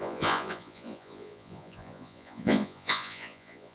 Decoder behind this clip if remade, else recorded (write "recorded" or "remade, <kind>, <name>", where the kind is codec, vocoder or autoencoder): remade, vocoder, Vocos